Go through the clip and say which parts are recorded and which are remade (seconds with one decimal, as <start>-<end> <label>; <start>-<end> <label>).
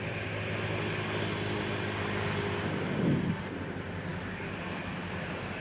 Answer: 0.0-4.1 recorded; 4.1-4.9 remade; 4.9-5.6 recorded